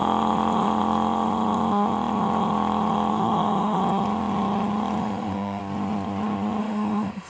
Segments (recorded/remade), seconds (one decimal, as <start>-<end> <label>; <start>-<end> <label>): 0.0-3.1 recorded; 3.1-3.8 remade; 3.8-5.0 recorded; 5.0-5.6 remade; 5.6-6.6 recorded; 6.6-7.3 remade